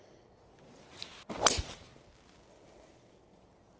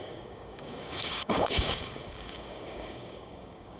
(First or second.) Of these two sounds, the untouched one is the first